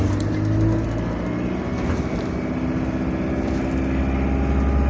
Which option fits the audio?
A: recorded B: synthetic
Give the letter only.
A